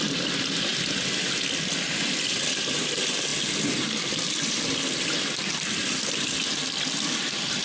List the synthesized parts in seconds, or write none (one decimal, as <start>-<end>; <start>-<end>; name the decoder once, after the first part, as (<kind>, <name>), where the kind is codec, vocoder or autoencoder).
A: 0.0-0.7 (vocoder, BigVGAN v2); 2.5-3.3; 4.9-7.6